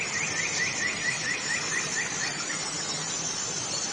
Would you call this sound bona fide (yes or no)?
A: yes